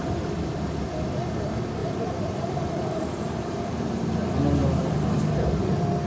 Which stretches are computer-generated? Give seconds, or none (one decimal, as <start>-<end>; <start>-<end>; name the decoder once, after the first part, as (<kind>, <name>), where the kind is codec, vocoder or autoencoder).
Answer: 1.8-4.0 (vocoder, BigVGAN v2); 4.6-5.2